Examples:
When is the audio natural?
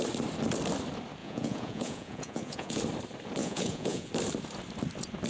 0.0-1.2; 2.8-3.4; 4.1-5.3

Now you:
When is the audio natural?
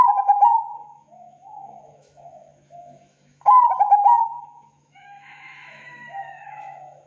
none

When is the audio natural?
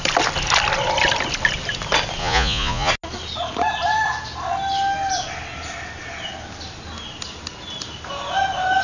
0.0-2.2; 2.9-8.8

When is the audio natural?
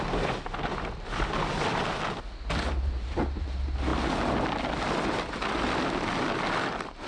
0.0-7.1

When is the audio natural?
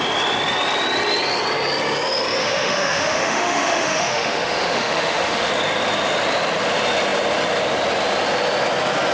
0.0-2.4; 5.5-9.1